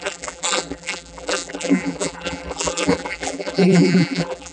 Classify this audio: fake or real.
fake